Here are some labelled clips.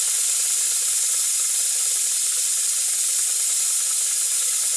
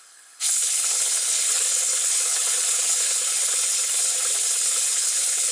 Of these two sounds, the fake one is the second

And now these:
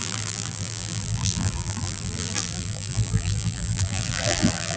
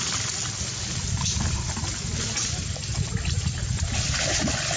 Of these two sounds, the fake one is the first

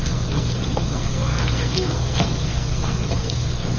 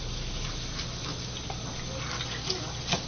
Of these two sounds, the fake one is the first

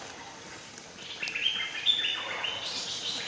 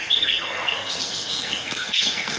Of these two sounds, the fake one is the second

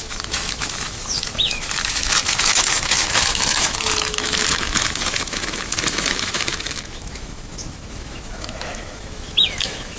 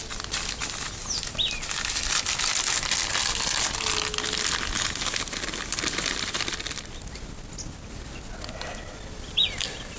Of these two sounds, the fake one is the first